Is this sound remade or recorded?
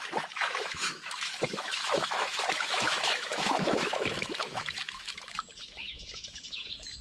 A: remade